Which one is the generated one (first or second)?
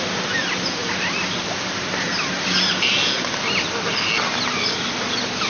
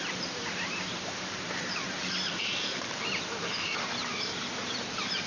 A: second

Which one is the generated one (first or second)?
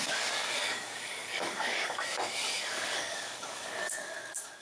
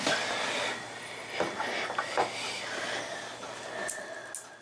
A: first